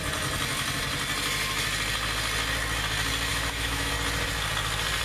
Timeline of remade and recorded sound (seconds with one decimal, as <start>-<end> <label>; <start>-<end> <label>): 0.0-3.3 recorded; 3.3-3.9 remade; 3.9-5.0 recorded

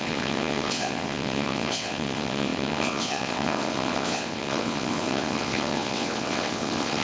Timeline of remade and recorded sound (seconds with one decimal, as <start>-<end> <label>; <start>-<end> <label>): 0.0-7.0 remade

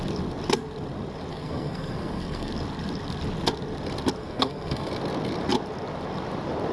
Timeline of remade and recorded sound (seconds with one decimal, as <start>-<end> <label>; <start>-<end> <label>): 0.0-1.3 recorded; 1.3-2.5 remade; 2.5-4.2 recorded; 4.2-4.9 remade; 4.9-6.7 recorded

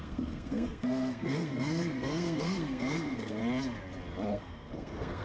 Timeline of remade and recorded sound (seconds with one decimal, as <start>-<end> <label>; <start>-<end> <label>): 0.0-3.4 remade; 3.4-4.3 recorded; 4.3-5.2 remade

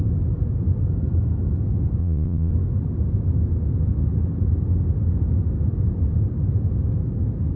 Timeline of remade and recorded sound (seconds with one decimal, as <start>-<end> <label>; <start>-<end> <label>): 0.0-2.0 recorded; 2.0-2.5 remade; 2.5-7.6 recorded